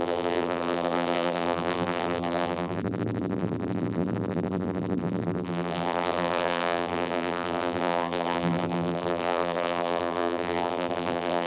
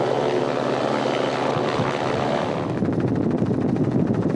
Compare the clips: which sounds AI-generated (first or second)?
first